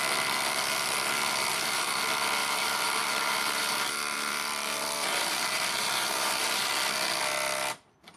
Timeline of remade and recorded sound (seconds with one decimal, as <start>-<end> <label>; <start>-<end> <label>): 0.0-1.5 recorded; 1.5-2.0 remade; 2.0-2.4 recorded; 2.4-6.7 remade; 6.7-8.2 recorded